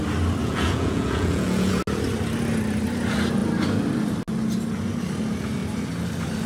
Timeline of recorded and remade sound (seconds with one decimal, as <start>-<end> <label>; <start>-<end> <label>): 0.0-0.4 recorded; 0.4-1.7 remade; 1.7-6.5 recorded